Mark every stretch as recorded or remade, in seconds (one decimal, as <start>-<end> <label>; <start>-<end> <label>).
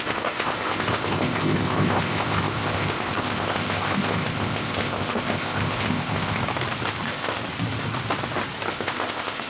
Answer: 0.0-6.4 remade; 6.4-7.0 recorded; 7.0-7.4 remade; 7.4-8.7 recorded; 8.7-9.5 remade